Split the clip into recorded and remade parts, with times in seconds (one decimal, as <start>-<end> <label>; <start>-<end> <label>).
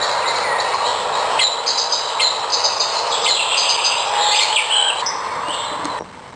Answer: 0.0-6.4 recorded